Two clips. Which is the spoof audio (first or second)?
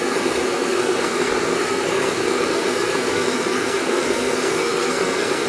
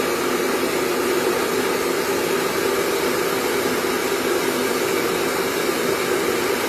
first